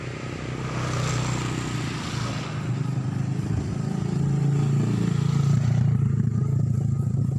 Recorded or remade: recorded